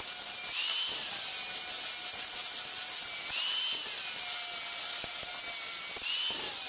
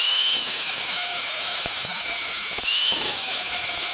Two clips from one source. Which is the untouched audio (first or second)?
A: first